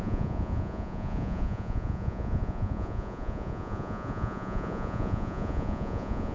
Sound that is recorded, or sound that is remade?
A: remade